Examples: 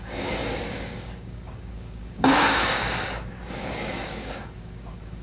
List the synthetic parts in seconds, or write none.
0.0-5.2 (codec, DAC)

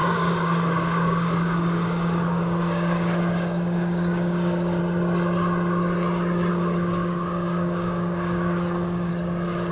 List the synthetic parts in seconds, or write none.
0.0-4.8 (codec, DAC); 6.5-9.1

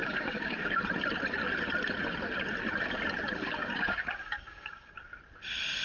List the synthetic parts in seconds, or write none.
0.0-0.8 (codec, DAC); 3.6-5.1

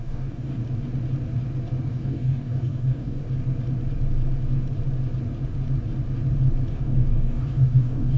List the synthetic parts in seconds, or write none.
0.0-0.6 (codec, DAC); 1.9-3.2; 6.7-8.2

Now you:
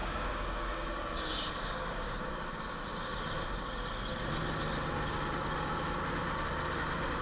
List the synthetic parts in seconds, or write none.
0.0-2.3 (codec, DAC)

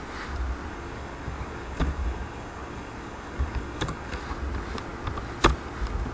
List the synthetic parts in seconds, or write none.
0.7-4.2 (codec, DAC)